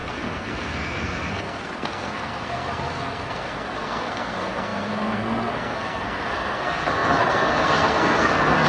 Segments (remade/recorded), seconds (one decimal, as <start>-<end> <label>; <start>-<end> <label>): 0.0-8.7 remade